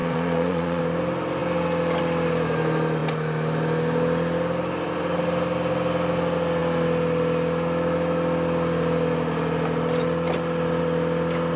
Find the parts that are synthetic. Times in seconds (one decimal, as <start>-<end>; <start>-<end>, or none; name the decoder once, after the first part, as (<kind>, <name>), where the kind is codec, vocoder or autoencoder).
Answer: 0.0-0.8 (vocoder, Vocos)